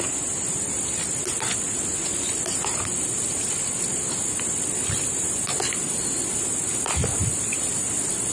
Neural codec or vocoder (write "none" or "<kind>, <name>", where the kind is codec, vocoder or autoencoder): none